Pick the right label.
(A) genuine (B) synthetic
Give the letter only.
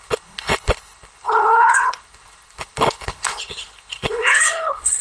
B